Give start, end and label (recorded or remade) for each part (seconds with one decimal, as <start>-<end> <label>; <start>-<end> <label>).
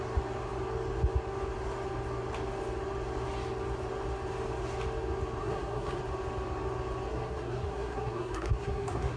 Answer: 0.0-5.4 recorded; 5.4-6.0 remade; 6.0-7.1 recorded; 7.1-9.2 remade